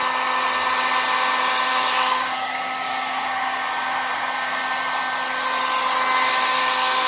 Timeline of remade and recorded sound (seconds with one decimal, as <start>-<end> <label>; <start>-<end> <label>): 0.0-1.7 recorded; 1.7-4.6 remade; 4.6-6.3 recorded; 6.3-7.1 remade